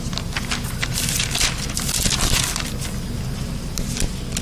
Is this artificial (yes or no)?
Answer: no